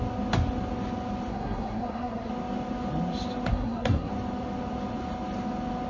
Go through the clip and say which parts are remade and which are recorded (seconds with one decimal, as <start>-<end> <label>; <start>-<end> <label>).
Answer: 0.0-1.3 recorded; 1.3-2.3 remade; 2.3-3.5 recorded; 3.5-4.1 remade; 4.1-5.9 recorded